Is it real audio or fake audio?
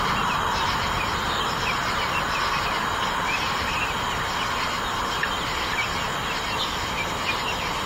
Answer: real